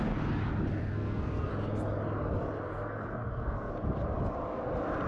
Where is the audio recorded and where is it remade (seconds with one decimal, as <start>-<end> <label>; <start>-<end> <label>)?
0.0-0.8 recorded; 0.8-1.5 remade; 1.5-2.7 recorded; 2.7-3.7 remade; 3.7-5.1 recorded